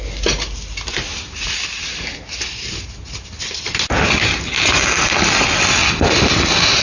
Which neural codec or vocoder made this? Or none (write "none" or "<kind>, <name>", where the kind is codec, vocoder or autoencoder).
none